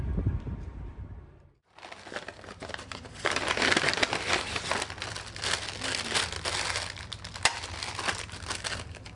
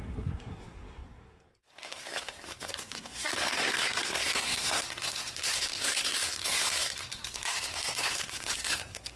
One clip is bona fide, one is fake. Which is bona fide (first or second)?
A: first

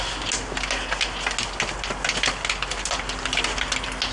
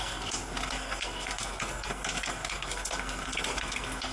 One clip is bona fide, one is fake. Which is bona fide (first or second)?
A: first